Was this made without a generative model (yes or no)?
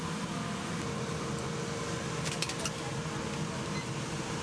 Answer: yes